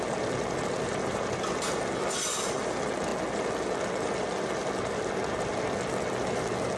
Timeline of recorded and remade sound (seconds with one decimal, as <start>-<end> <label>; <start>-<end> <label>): 0.0-6.8 recorded